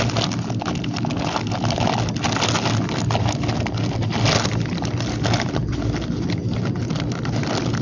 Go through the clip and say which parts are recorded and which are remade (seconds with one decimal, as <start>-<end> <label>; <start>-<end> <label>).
0.0-7.8 recorded